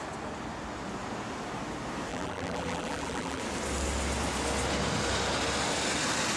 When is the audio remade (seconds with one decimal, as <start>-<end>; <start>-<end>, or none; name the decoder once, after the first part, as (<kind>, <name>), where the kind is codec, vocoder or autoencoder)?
2.1-3.4 (vocoder, BigVGAN v2)